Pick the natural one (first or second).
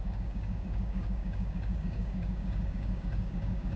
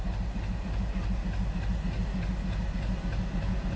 second